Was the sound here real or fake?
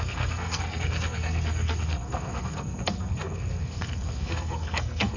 fake